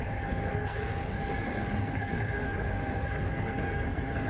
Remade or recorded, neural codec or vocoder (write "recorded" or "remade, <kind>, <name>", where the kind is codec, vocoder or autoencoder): remade, codec, SNAC